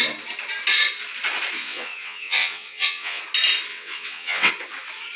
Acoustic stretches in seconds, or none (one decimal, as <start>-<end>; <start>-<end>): 0.0-1.6; 3.2-3.7; 4.5-5.2